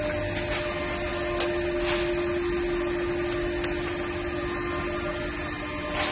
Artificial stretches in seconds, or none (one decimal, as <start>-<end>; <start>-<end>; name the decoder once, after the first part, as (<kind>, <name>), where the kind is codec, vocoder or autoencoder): none